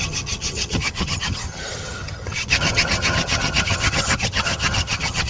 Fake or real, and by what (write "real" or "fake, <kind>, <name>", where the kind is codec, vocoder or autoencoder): fake, vocoder, HiFi-GAN